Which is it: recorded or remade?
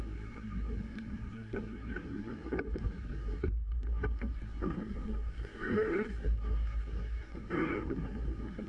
remade